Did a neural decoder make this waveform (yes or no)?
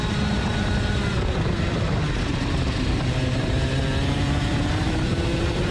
yes